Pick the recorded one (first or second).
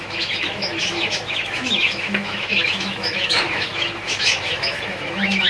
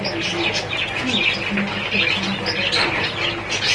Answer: second